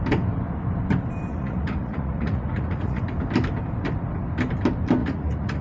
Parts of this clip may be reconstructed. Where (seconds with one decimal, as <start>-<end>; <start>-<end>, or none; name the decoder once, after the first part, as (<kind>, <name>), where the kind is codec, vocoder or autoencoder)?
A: 1.3-3.0 (vocoder, Vocos); 5.0-5.6